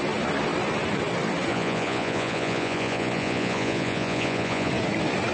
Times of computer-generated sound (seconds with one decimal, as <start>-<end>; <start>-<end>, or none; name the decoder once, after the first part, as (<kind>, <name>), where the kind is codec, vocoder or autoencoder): 1.5-4.7 (vocoder, Vocos)